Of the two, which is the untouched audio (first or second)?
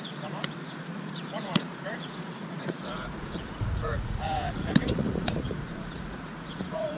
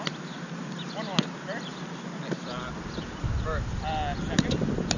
second